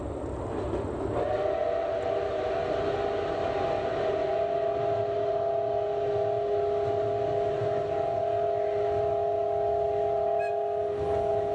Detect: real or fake real